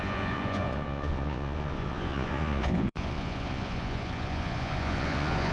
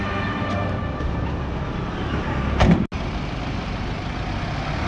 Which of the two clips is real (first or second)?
second